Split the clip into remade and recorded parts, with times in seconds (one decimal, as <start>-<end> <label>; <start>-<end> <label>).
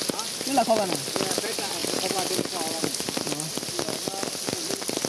0.0-5.1 recorded